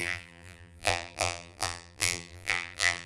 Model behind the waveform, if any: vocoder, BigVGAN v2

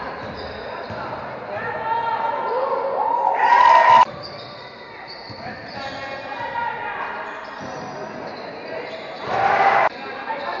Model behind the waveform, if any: none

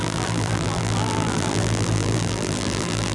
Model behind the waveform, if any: vocoder, BigVGAN v2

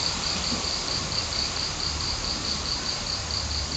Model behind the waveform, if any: vocoder, BigVGAN v2